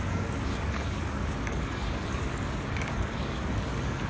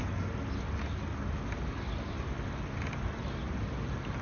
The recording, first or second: second